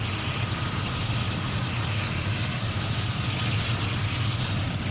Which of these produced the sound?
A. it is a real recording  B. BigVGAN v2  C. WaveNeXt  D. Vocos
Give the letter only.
A